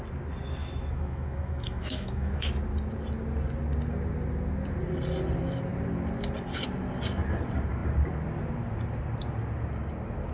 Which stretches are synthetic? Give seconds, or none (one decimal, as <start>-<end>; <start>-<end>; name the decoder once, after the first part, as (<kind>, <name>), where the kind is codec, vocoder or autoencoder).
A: 0.6-2.5 (autoencoder, DAC-VAE)